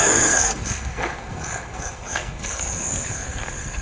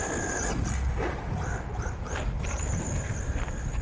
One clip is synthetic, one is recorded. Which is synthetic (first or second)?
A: first